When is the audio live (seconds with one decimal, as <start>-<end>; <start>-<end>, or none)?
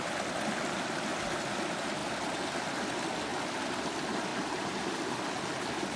0.0-4.3; 5.0-6.0